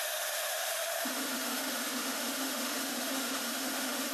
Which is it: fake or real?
fake